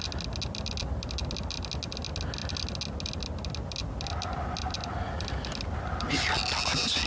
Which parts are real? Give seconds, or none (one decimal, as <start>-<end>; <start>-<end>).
0.0-7.1